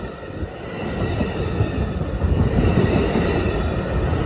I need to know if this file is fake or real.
real